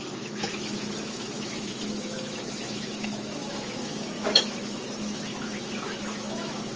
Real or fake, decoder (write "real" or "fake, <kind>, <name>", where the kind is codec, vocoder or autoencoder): fake, autoencoder, DAC-VAE